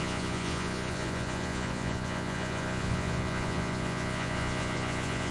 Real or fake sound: fake